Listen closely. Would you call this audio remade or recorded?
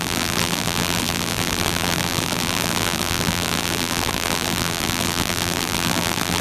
remade